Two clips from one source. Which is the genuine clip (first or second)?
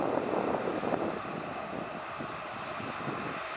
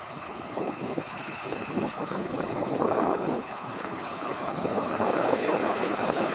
first